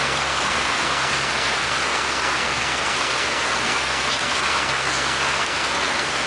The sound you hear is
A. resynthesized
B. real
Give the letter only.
A